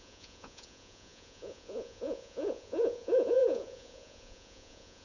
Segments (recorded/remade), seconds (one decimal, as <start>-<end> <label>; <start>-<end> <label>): 0.0-5.0 remade